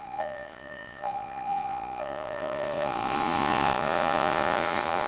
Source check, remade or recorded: remade